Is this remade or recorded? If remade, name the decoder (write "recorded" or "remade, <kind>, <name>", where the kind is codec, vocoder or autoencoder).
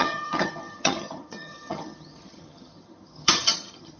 remade, vocoder, HiFi-GAN